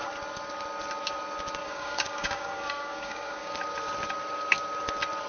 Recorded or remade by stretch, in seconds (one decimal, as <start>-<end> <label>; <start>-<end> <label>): 0.0-1.6 recorded; 1.6-3.5 remade; 3.5-5.3 recorded